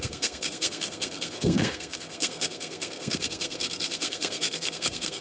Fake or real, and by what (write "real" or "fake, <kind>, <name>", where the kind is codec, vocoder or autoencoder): fake, codec, SNAC